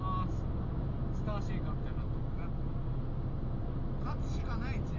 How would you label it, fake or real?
real